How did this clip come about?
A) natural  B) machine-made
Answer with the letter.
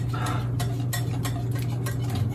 A